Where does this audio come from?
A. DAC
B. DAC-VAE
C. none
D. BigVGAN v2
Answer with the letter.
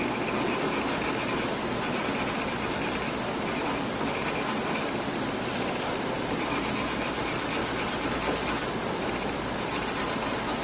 C